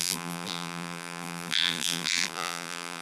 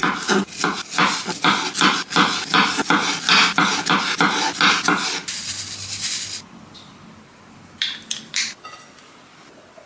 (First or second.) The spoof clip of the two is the first